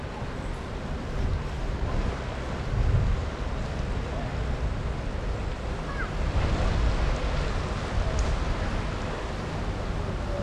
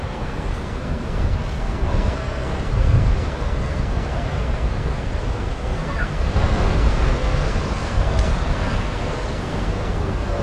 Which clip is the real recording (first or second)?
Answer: first